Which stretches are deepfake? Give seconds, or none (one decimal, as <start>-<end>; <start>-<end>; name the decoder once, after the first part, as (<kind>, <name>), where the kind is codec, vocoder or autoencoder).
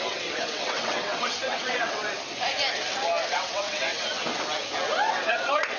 0.0-2.0 (vocoder, WaveNeXt); 3.3-3.9; 5.1-5.8